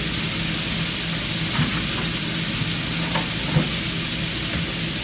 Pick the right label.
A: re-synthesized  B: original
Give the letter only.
B